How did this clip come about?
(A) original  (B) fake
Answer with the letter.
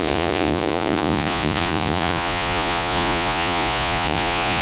B